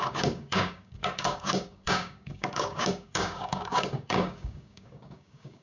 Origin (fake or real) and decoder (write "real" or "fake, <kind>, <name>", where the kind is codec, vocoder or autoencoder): fake, codec, DAC